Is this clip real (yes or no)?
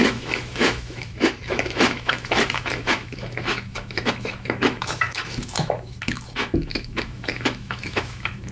no